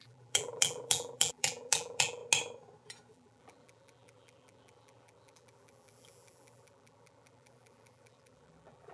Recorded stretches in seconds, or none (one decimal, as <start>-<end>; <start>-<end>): 2.2-3.1